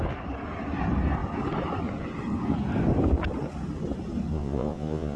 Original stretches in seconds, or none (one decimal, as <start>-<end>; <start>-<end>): 0.0-4.3